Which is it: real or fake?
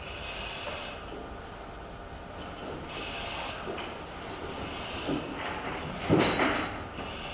fake